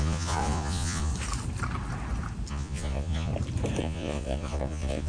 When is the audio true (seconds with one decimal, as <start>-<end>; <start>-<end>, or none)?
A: 1.1-2.5; 3.3-3.8